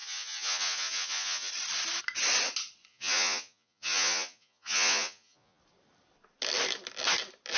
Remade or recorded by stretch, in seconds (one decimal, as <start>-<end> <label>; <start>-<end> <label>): 0.0-1.5 remade; 1.5-2.9 recorded; 2.9-5.6 remade; 5.6-7.6 recorded